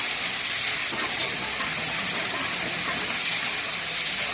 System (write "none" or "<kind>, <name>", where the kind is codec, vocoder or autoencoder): none